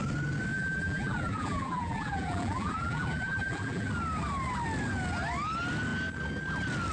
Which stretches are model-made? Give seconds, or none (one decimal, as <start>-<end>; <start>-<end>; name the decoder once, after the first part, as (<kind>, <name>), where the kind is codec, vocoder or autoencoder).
0.5-3.9 (vocoder, BigVGAN v2)